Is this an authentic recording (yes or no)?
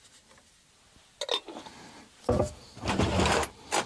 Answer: yes